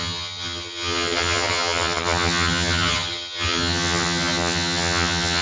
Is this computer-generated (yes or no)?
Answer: yes